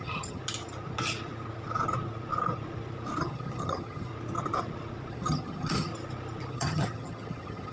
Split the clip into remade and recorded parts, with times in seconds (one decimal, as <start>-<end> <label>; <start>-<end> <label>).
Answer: 0.0-0.4 remade; 0.4-3.2 recorded; 3.2-4.1 remade; 4.1-5.1 recorded; 5.1-5.9 remade; 5.9-6.5 recorded; 6.5-7.7 remade